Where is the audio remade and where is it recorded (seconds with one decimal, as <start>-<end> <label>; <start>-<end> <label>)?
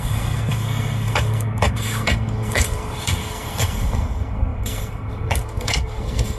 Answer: 0.0-6.4 remade